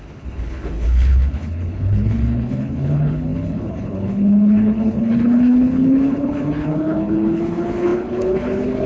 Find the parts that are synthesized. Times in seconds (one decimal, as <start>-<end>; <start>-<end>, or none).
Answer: 0.0-8.9